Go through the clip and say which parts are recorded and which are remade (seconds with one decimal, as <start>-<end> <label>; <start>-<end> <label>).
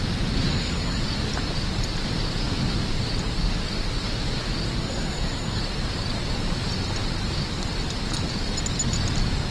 0.0-0.5 recorded; 0.5-1.0 remade; 1.0-4.8 recorded; 4.8-5.6 remade; 5.6-9.5 recorded